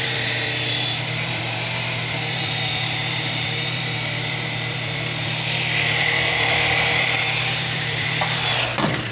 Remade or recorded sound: remade